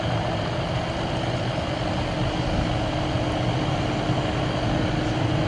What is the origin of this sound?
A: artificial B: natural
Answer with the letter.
B